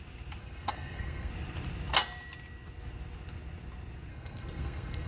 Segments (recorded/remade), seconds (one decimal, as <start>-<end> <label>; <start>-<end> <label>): 0.0-0.4 recorded; 0.4-1.3 remade; 1.3-4.1 recorded; 4.1-5.1 remade